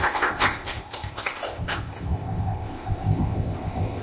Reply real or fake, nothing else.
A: fake